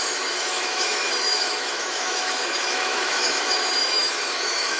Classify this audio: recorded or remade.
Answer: remade